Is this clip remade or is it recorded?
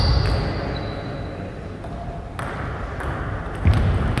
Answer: recorded